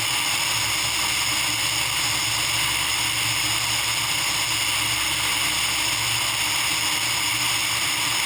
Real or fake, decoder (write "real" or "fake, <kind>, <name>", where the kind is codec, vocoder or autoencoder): real